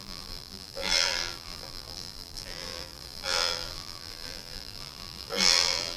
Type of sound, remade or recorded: remade